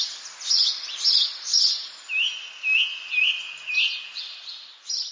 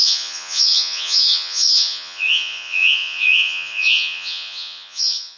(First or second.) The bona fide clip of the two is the first